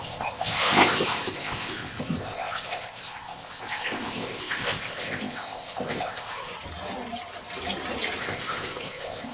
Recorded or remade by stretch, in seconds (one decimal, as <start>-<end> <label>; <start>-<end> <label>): 0.0-6.5 remade; 6.5-8.2 recorded; 8.2-9.3 remade